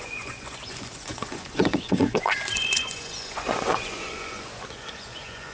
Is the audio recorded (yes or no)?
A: no